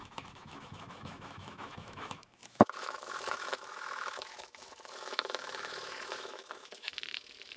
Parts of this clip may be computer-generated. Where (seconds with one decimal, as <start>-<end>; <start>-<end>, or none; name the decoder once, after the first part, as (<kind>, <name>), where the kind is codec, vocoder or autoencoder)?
0.0-7.6 (autoencoder, DAC-VAE)